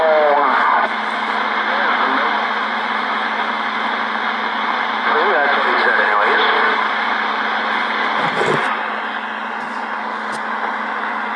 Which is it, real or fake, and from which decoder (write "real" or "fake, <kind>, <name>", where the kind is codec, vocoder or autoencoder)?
real